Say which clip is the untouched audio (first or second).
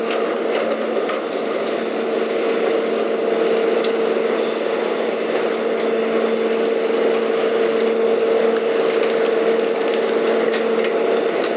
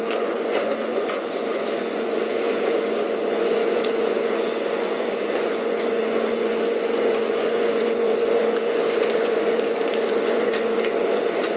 first